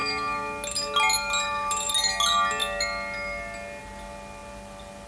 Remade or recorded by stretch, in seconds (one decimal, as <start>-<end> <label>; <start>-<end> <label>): 0.0-5.1 recorded